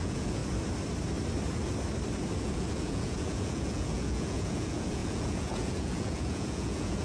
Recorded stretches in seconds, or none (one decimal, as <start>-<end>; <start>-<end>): 0.4-2.4